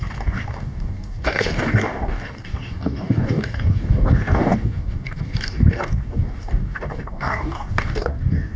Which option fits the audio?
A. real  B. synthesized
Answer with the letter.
B